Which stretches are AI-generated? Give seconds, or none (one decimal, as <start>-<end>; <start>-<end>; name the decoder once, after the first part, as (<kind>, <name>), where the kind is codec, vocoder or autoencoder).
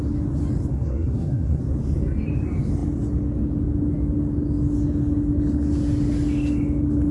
0.7-1.6 (codec, SNAC)